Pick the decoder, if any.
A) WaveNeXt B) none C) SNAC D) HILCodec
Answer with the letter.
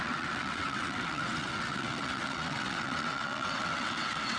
A